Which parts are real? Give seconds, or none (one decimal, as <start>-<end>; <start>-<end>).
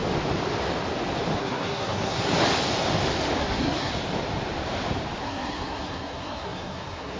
0.0-1.4; 2.3-3.4; 3.9-5.2